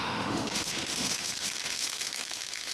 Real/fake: fake